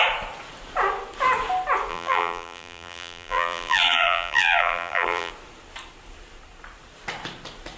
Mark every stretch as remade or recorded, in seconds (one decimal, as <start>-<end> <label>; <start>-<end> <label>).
0.0-1.9 recorded; 1.9-5.3 remade; 5.3-7.8 recorded